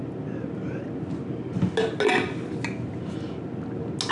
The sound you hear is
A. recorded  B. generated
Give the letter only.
A